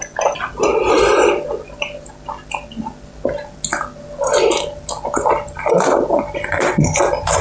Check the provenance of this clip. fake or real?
real